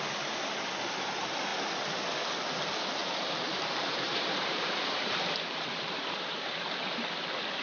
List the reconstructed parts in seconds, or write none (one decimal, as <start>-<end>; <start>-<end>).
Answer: 3.0-6.6